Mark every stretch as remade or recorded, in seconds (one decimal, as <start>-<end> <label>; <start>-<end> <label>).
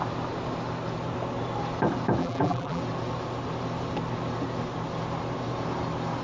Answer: 0.0-2.2 recorded; 2.2-2.8 remade; 2.8-6.2 recorded